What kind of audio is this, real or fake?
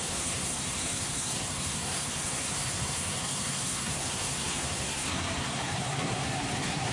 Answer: fake